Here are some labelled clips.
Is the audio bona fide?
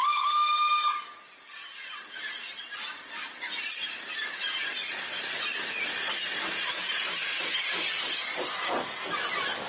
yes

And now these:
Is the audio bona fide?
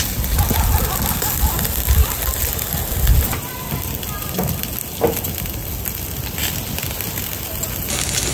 yes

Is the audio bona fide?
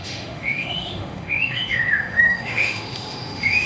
no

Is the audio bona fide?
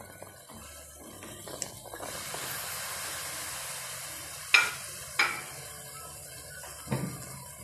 yes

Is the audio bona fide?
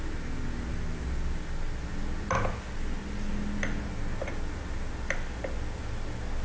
yes